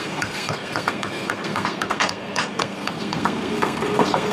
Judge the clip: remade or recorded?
remade